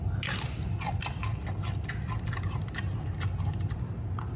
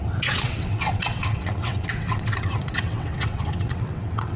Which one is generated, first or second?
second